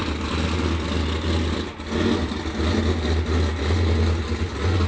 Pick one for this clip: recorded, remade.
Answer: recorded